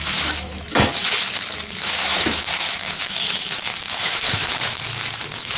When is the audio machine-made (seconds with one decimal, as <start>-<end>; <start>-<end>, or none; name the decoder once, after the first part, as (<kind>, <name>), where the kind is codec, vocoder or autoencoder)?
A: 0.0-5.6 (autoencoder, DAC-VAE)

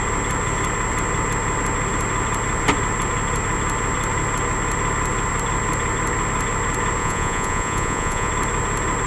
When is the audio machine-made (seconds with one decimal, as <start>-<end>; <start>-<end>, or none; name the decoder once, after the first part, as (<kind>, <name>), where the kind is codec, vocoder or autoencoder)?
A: 7.0-8.3 (vocoder, Vocos)

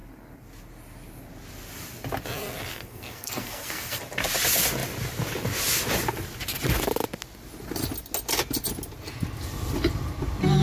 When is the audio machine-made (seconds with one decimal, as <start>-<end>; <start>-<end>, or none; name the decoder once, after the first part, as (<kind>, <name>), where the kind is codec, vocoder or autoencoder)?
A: 2.7-4.0 (codec, SNAC)